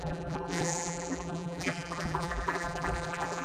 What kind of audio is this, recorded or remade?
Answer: remade